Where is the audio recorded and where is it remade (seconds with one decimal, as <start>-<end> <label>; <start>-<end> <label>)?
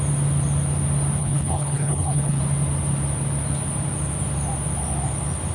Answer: 0.0-1.2 recorded; 1.2-2.4 remade; 2.4-5.5 recorded